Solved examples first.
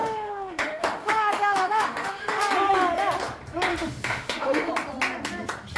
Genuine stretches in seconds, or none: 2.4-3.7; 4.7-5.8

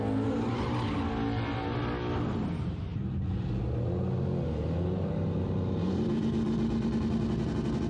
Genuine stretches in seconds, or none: 0.0-7.9

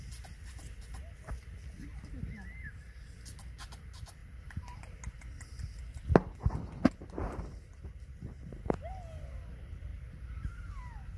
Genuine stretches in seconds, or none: 0.0-11.2

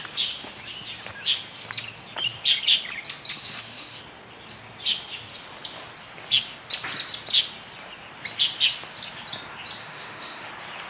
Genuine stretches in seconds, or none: 0.0-3.3; 4.0-9.8; 10.5-10.9

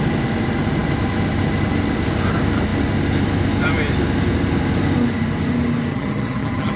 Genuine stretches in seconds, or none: 0.0-5.9